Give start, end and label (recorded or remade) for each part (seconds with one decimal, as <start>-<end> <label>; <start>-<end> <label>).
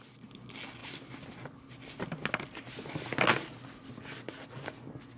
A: 0.0-5.2 recorded